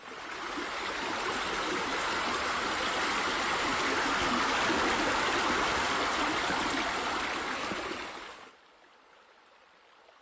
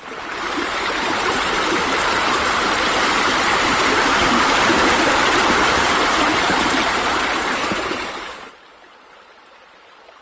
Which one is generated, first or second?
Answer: second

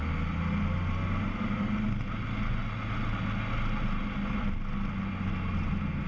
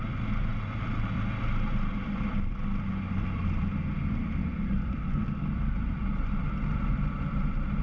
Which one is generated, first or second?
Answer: second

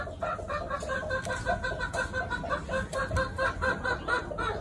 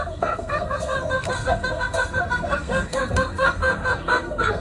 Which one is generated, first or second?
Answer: second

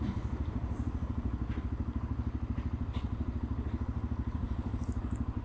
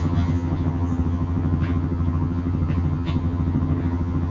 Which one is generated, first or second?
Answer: second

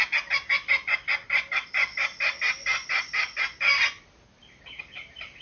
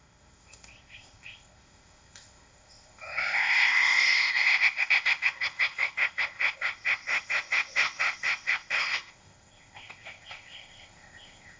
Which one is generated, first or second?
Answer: second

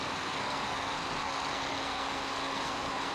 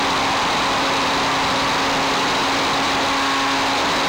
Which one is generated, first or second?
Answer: first